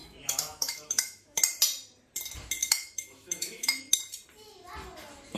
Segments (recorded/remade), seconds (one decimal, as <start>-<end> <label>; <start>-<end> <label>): 0.0-1.4 remade; 1.4-2.6 recorded; 2.6-3.9 remade; 3.9-5.4 recorded